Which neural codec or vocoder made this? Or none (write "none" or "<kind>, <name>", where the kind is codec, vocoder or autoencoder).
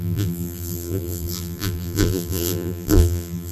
vocoder, BigVGAN v2